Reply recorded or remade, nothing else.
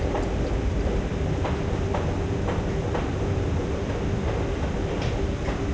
remade